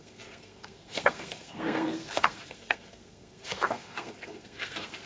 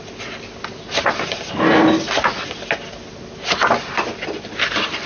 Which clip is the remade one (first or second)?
first